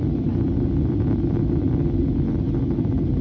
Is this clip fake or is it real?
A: real